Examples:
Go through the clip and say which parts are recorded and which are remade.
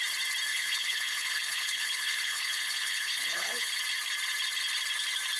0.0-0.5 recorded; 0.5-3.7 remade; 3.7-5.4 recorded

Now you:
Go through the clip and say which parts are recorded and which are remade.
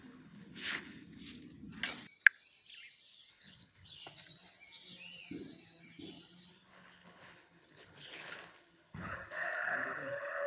0.0-1.2 remade; 1.2-3.3 recorded; 3.3-4.0 remade; 4.0-6.5 recorded; 6.5-10.5 remade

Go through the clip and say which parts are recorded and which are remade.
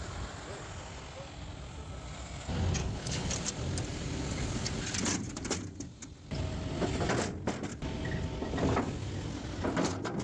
0.0-2.8 recorded; 2.8-3.3 remade; 3.3-10.2 recorded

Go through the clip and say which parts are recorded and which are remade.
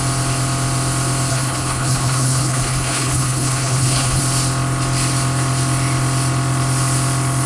0.0-1.3 recorded; 1.3-4.2 remade; 4.2-7.5 recorded